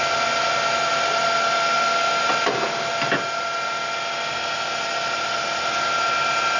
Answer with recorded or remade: recorded